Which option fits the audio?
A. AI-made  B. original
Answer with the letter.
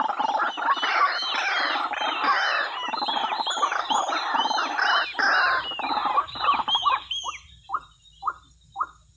B